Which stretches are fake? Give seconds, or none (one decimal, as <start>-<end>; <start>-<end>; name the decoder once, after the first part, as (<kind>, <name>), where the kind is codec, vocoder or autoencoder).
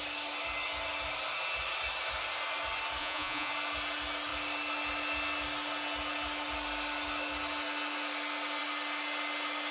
3.0-3.5 (vocoder, Vocos)